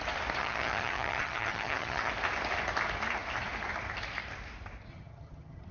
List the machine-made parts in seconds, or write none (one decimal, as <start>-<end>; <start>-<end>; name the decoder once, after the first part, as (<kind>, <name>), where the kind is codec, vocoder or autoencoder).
0.4-2.1 (vocoder, HiFi-GAN); 4.9-5.7